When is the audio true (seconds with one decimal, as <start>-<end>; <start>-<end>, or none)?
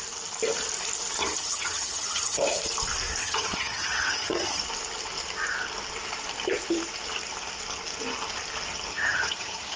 0.0-1.2; 2.4-3.2; 4.6-8.9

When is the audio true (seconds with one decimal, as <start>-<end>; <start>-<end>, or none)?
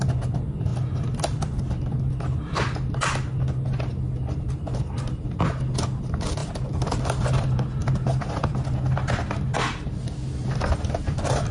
0.0-11.5